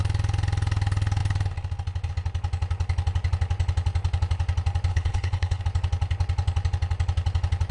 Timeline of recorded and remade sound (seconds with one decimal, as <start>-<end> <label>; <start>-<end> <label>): 0.0-4.9 recorded; 4.9-5.6 remade; 5.6-7.7 recorded